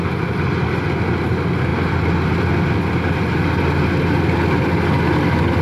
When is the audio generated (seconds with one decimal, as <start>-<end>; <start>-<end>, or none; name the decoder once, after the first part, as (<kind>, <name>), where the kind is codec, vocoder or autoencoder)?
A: none

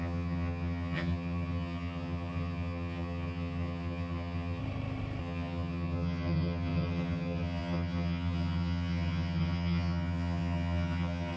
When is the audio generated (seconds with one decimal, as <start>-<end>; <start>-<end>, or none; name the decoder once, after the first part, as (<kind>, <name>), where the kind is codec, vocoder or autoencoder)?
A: 0.0-4.6 (vocoder, HiFi-GAN); 5.2-11.4

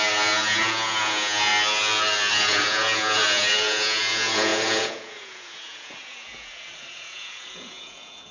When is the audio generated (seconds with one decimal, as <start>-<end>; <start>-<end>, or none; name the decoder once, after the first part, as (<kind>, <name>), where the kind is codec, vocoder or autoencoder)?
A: 0.0-1.5 (vocoder, Vocos); 2.3-8.3

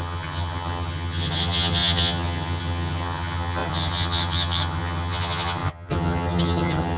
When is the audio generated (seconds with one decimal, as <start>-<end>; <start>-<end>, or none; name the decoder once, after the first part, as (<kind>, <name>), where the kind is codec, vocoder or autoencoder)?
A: 0.0-7.0 (vocoder, HiFi-GAN)